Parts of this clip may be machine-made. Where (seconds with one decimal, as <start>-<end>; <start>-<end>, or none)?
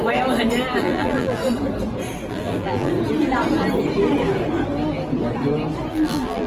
0.8-1.4; 2.3-2.9; 5.9-6.5